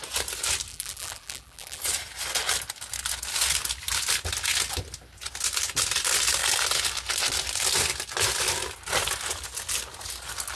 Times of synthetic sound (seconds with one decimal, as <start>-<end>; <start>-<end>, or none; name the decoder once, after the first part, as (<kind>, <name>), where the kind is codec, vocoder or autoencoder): 0.7-1.8 (vocoder, BigVGAN v2)